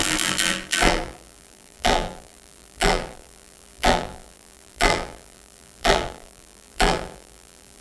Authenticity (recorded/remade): remade